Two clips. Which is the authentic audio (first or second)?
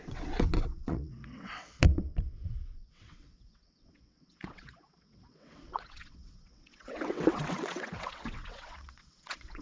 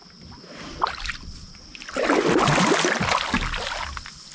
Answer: second